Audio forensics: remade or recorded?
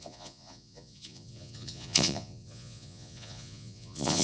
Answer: remade